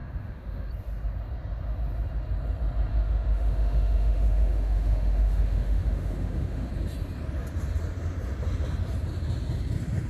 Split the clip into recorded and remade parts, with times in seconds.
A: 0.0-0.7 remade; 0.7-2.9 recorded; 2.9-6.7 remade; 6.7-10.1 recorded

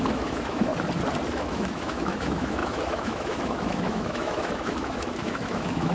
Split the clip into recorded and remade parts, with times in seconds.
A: 0.0-0.7 remade; 0.7-1.3 recorded; 1.3-5.9 remade

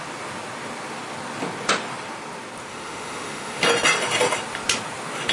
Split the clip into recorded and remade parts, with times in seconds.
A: 0.0-2.7 recorded; 2.7-3.6 remade; 3.6-5.3 recorded